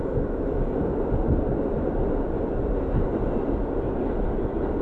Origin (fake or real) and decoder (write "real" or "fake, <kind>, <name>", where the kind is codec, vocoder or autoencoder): real